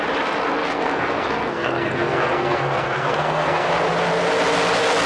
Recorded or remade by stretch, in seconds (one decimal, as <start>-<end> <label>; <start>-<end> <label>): 0.0-0.6 recorded; 0.6-3.7 remade; 3.7-5.1 recorded